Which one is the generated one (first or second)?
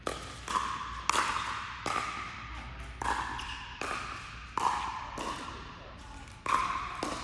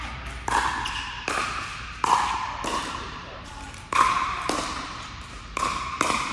second